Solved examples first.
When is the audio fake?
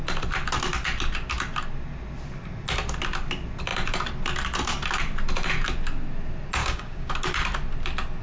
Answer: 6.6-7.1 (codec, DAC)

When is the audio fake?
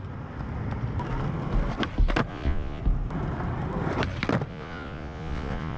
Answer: 2.3-2.8 (vocoder, Vocos); 4.5-5.8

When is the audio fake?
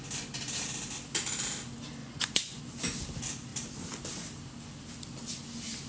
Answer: 2.0-2.6 (vocoder, Vocos)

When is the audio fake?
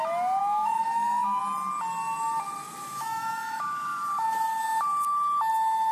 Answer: 0.4-1.4 (autoencoder, DAC-VAE); 2.6-4.0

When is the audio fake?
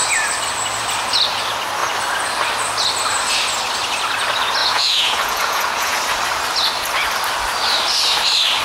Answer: 4.6-6.0 (vocoder, Vocos)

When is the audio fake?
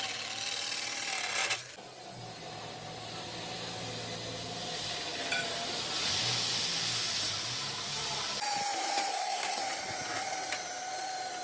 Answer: 9.1-9.6 (codec, SNAC)